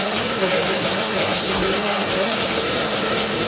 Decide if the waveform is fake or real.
fake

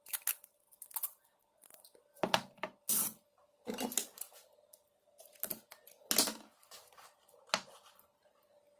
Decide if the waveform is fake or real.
real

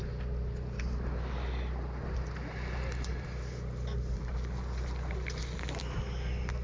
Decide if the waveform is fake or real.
real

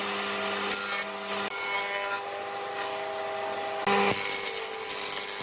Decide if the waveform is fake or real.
real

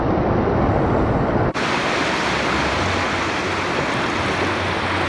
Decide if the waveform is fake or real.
real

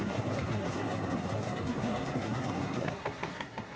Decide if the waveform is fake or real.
fake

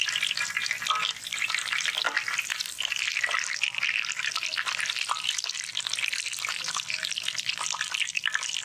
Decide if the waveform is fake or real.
real